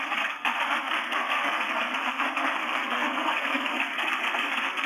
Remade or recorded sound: remade